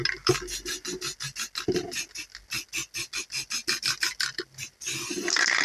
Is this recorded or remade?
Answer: recorded